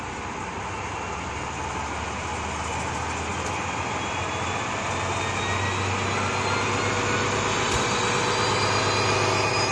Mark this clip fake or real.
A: real